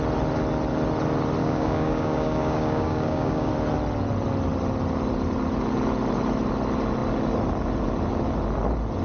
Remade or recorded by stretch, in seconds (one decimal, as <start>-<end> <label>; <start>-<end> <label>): 0.0-1.4 recorded; 1.4-3.5 remade; 3.5-9.0 recorded